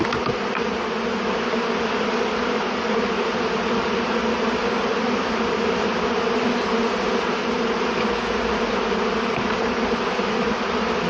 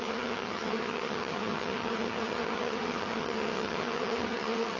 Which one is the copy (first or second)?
second